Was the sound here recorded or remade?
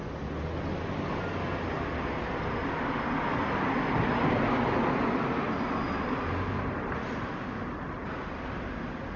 recorded